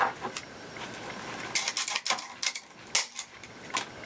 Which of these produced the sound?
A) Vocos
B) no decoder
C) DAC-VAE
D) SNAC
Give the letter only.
B